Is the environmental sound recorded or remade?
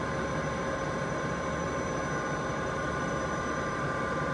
remade